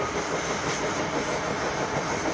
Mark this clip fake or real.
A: real